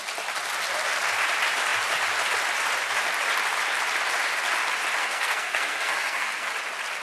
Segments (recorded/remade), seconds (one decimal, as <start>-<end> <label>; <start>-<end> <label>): 0.0-5.0 recorded; 5.0-6.5 remade; 6.5-7.0 recorded